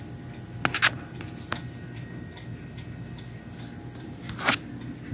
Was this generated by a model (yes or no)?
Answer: no